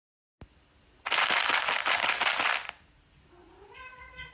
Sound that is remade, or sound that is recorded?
recorded